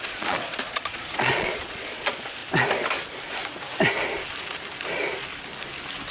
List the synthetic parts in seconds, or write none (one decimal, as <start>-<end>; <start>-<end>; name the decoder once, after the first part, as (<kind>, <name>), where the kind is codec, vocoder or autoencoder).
0.0-2.4 (vocoder, Vocos)